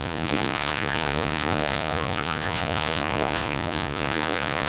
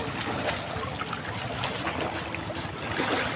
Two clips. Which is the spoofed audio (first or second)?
first